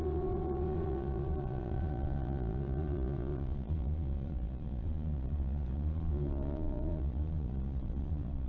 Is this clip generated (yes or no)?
yes